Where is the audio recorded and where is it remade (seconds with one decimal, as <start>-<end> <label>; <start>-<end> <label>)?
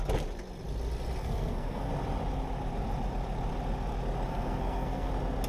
0.0-1.2 recorded; 1.2-1.9 remade; 1.9-4.3 recorded; 4.3-5.1 remade; 5.1-5.5 recorded